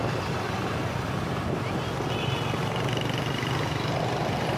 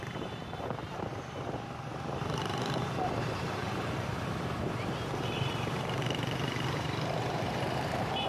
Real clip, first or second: first